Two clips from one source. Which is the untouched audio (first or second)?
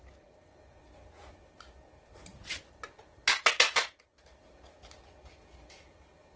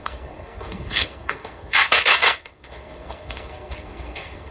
first